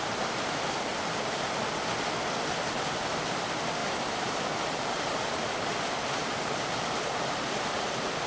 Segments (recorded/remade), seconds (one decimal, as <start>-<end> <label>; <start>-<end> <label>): 0.0-3.8 recorded; 3.8-5.8 remade; 5.8-6.2 recorded; 6.2-7.6 remade; 7.6-8.3 recorded